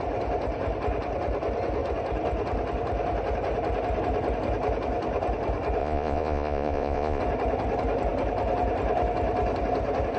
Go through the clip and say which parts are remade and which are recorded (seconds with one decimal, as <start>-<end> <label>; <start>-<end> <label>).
0.0-5.8 recorded; 5.8-7.2 remade; 7.2-10.2 recorded